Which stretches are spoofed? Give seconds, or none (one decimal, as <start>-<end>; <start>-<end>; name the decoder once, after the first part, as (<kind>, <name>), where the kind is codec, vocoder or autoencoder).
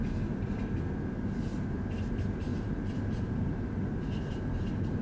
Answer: 1.5-2.1 (vocoder, BigVGAN v2); 2.5-5.0